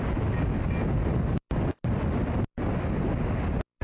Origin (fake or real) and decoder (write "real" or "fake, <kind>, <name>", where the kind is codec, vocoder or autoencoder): real